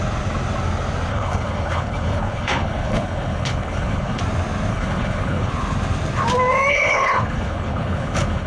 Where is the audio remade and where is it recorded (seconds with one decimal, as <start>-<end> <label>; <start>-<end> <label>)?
0.0-1.1 recorded; 1.1-4.2 remade; 4.2-4.7 recorded; 4.7-5.5 remade; 5.5-6.7 recorded; 6.7-8.5 remade